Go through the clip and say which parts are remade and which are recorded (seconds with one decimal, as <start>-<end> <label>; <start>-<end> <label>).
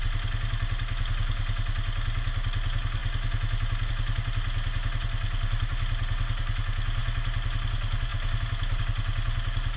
0.0-9.8 recorded